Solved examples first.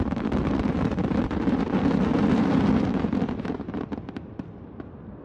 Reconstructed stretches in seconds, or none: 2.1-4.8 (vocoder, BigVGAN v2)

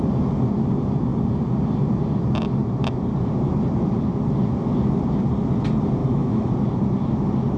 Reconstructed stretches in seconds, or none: 6.0-6.5 (autoencoder, DAC-VAE)

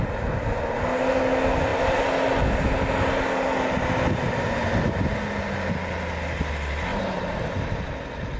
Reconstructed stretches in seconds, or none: 6.9-7.8 (vocoder, BigVGAN v2)

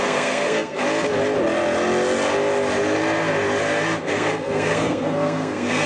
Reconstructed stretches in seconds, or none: 0.0-0.8 (codec, SNAC); 4.0-5.9

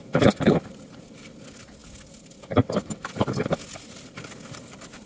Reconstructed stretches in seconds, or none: none